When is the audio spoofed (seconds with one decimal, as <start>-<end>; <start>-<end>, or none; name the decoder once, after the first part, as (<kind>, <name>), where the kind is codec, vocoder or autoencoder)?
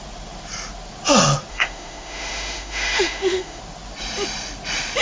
1.5-3.6 (autoencoder, DAC-VAE)